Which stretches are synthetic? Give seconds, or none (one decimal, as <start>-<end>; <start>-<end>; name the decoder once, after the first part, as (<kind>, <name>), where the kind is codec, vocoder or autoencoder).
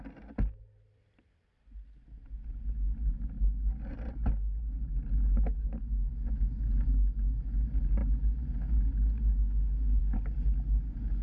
none